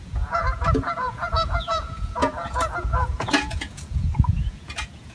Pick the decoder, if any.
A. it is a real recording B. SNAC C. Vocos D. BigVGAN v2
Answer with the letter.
C